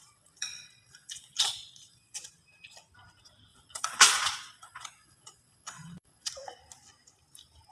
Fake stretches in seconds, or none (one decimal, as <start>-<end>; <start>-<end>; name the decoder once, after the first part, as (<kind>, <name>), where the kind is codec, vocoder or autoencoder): 0.0-2.2 (vocoder, Vocos); 3.5-6.3